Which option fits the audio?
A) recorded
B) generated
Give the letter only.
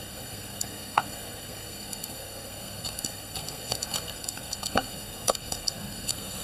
B